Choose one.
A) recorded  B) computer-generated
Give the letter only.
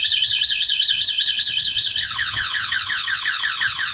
B